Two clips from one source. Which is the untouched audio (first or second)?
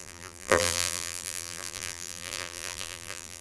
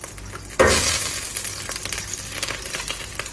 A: second